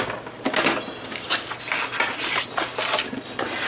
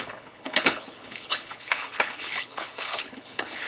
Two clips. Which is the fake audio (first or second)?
second